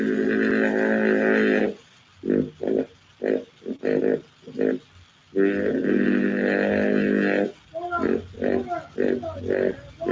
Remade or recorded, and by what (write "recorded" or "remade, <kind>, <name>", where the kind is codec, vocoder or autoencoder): recorded